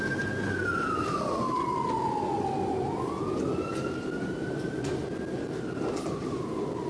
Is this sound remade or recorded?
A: recorded